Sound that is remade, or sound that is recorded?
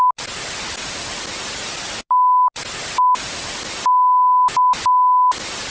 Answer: recorded